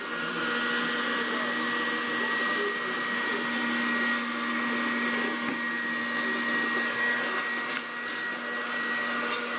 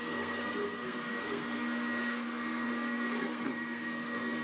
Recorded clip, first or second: first